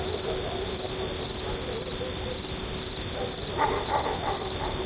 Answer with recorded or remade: recorded